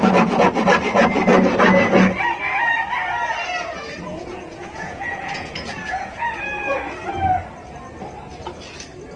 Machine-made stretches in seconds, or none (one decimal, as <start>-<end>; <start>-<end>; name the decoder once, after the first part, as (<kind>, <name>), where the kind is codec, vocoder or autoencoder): 4.1-6.7 (vocoder, Vocos)